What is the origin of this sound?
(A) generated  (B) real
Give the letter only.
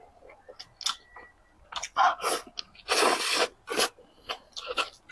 B